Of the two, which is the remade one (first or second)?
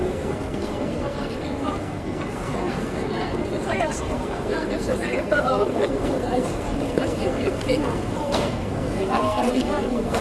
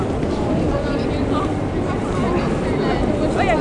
first